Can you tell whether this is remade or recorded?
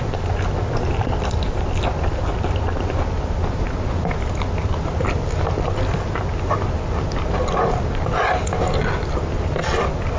recorded